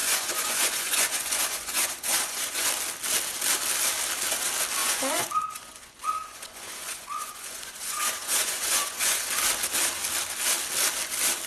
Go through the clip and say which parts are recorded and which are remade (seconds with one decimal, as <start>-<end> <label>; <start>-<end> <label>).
0.0-2.7 remade; 2.7-4.8 recorded; 4.8-9.3 remade; 9.3-11.5 recorded